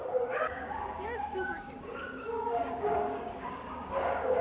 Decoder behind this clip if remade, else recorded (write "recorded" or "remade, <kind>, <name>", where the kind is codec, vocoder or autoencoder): remade, codec, DAC